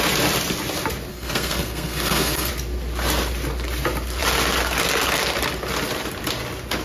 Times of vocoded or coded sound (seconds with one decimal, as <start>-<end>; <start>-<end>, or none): 1.1-2.5